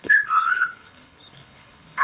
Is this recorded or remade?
remade